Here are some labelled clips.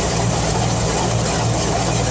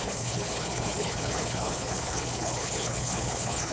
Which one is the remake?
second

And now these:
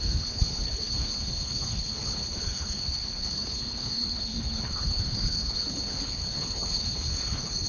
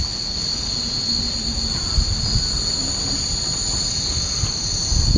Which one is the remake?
first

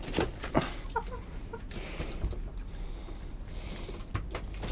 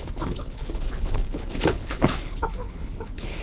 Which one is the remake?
second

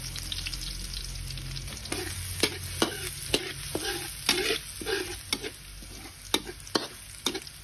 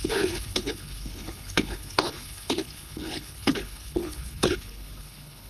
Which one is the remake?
second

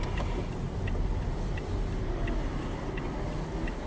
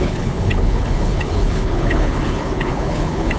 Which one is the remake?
second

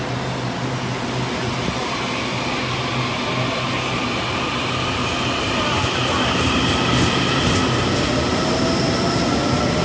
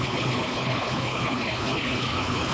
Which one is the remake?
second